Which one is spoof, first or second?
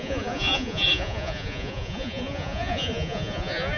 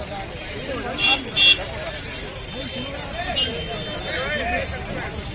first